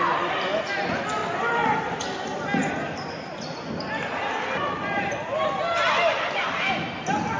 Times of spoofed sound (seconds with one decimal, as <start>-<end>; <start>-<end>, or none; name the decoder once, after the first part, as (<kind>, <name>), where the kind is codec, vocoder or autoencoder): none